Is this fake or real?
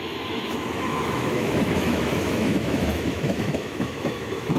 fake